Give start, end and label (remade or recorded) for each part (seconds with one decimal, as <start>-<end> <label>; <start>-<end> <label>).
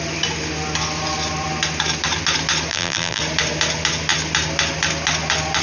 0.0-2.7 recorded; 2.7-3.2 remade; 3.2-5.6 recorded